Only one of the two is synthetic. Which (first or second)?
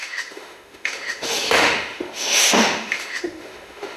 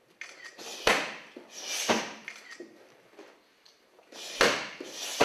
first